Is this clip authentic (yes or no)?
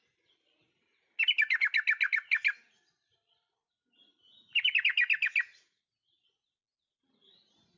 yes